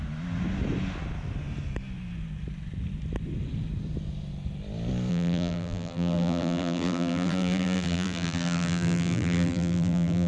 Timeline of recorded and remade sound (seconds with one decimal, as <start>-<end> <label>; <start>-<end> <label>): 0.0-5.1 recorded; 5.1-10.3 remade